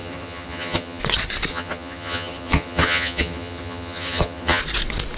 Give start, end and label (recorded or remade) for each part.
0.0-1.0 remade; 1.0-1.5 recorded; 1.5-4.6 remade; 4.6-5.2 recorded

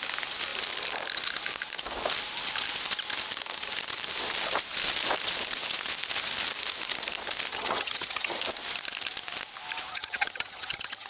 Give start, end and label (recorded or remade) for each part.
0.0-7.5 recorded; 7.5-8.4 remade; 8.4-9.9 recorded; 9.9-11.1 remade